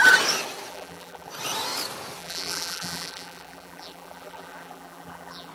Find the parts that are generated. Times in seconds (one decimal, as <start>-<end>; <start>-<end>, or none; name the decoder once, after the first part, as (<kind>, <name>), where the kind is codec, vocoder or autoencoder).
0.7-1.3 (vocoder, BigVGAN v2); 2.2-5.5